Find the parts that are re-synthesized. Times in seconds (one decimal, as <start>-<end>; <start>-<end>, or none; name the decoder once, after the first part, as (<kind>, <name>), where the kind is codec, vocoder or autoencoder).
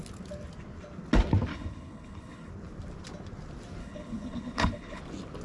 1.5-2.5 (codec, HILCodec); 3.8-5.0